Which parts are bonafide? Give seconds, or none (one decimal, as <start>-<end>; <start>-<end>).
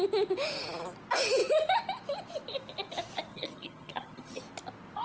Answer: 0.0-3.3; 4.4-5.0